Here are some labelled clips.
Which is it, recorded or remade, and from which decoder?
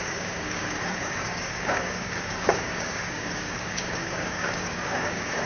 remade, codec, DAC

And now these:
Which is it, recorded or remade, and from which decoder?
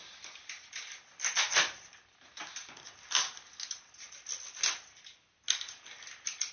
recorded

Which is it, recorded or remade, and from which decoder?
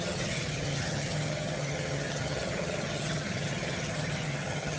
remade, vocoder, HiFi-GAN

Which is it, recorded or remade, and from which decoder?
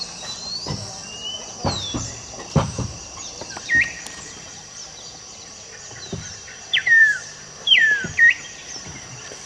remade, vocoder, BigVGAN v2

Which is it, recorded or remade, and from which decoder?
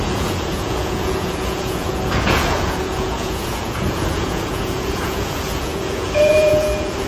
remade, vocoder, Vocos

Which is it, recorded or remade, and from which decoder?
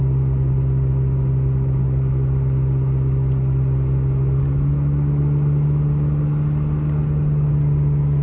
recorded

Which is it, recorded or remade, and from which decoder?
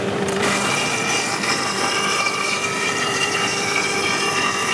remade, vocoder, BigVGAN v2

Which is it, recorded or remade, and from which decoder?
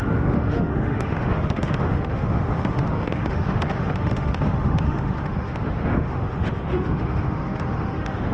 remade, autoencoder, DAC-VAE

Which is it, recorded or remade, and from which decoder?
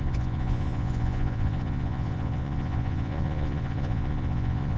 remade, vocoder, Vocos